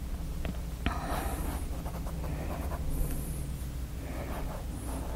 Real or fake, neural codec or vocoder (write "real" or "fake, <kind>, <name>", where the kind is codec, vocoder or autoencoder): real